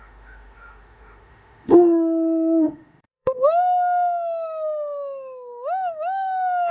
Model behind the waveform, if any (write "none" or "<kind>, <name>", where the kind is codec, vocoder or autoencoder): autoencoder, DAC-VAE